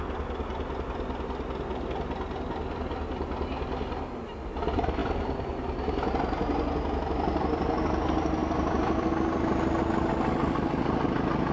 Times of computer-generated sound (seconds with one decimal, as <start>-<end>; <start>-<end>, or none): none